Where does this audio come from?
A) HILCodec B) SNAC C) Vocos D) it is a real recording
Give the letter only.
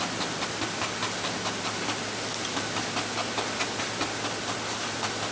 D